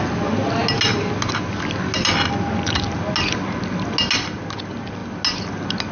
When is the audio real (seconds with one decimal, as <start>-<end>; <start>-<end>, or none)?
0.0-5.9